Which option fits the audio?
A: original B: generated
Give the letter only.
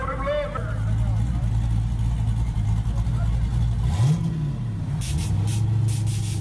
A